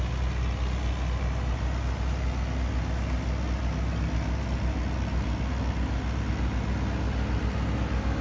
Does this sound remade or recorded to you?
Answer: recorded